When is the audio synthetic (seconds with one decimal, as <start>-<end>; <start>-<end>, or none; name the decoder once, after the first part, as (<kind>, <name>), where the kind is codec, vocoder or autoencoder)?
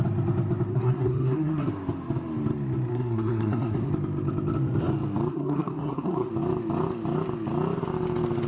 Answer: 0.7-1.7 (codec, SNAC); 2.9-3.9; 5.3-6.3